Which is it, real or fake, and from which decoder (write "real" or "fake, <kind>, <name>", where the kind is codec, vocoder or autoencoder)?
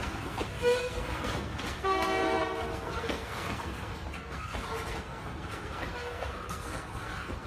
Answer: fake, codec, SNAC